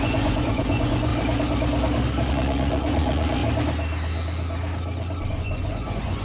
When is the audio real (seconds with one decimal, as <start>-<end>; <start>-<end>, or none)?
1.1-2.3; 3.4-5.3